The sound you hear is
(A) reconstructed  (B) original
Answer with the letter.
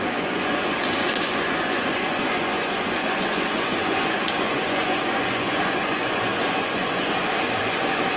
A